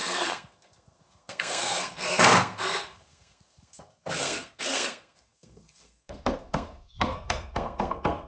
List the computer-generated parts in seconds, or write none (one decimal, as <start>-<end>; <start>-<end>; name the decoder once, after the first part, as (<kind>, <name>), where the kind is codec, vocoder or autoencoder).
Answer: 0.0-8.3 (codec, SNAC)